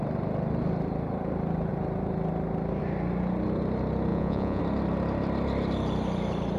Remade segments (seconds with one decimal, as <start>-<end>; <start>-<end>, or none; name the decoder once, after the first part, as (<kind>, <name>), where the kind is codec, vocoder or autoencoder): 4.1-4.6 (vocoder, Vocos)